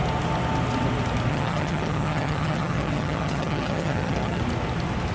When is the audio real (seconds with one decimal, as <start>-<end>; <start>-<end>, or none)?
0.0-1.3; 4.4-5.1